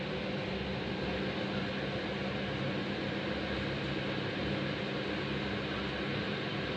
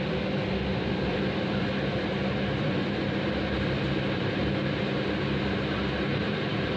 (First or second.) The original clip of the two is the first